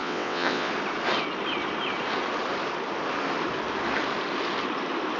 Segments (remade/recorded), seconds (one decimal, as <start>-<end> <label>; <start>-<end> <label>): 0.0-0.7 remade; 0.7-5.2 recorded